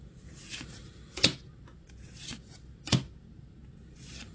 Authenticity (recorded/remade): recorded